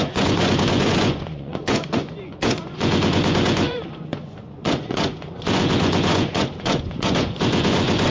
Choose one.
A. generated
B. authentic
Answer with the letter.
A